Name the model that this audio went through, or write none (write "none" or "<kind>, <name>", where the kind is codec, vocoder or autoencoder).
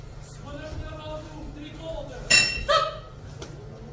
none